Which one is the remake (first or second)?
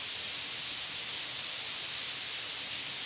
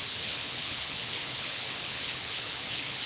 second